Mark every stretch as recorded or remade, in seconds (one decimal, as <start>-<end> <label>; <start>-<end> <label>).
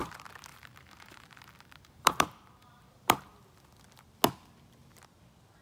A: 0.0-0.5 recorded; 0.5-3.2 remade; 3.2-5.6 recorded